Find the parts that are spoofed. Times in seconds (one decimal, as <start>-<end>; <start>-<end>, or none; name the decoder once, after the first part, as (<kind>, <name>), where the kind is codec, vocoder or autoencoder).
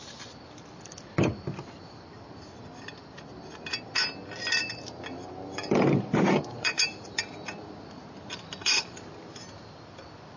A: 4.6-9.3 (vocoder, BigVGAN v2)